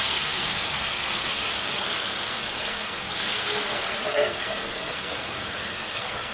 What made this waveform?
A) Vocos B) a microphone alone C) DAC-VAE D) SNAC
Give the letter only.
D